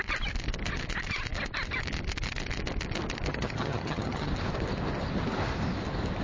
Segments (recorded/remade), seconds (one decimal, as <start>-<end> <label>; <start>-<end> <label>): 0.0-3.3 recorded; 3.3-4.3 remade; 4.3-6.2 recorded